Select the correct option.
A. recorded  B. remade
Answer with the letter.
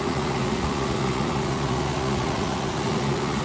B